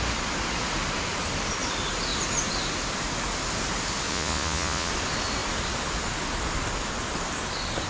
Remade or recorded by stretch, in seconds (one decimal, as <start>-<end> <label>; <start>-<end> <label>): 0.0-4.1 recorded; 4.1-4.9 remade; 4.9-7.9 recorded